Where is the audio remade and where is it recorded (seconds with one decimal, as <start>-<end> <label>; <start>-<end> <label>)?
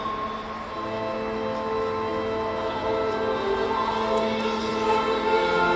0.0-5.8 recorded